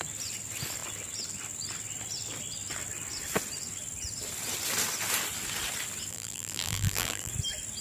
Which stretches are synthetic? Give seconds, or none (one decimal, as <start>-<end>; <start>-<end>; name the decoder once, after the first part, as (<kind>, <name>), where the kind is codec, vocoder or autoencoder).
6.1-7.3 (vocoder, BigVGAN v2)